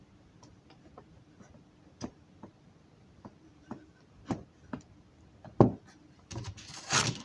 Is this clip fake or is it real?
real